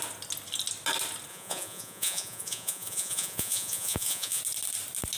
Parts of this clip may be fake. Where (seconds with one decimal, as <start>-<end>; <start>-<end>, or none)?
1.3-4.4